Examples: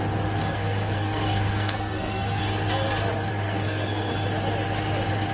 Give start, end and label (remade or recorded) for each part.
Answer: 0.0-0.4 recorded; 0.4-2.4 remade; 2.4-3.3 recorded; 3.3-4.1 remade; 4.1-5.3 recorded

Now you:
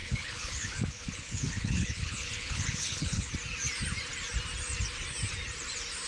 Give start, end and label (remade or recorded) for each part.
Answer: 0.0-3.3 remade; 3.3-6.1 recorded

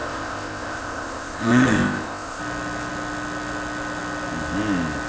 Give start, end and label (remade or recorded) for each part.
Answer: 0.0-2.4 remade; 2.4-5.1 recorded

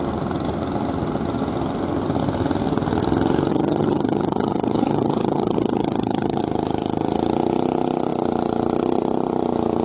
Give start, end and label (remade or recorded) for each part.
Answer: 0.0-3.5 recorded; 3.5-6.4 remade; 6.4-9.8 recorded